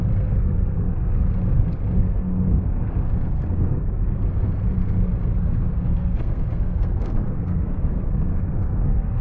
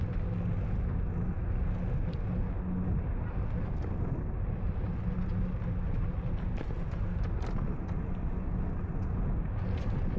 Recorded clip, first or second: second